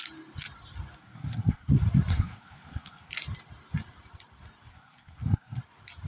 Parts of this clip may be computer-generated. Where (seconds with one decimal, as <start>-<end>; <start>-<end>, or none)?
1.0-1.7; 2.1-3.1; 4.7-5.6